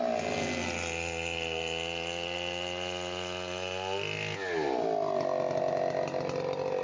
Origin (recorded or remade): recorded